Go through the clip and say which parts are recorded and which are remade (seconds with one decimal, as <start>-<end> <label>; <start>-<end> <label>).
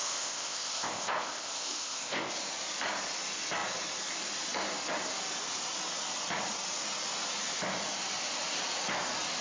0.0-2.3 remade; 2.3-9.4 recorded